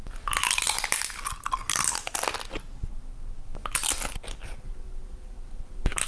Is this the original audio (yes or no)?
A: yes